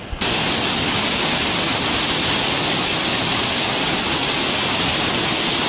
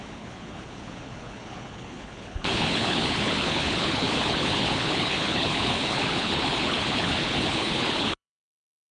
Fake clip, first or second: second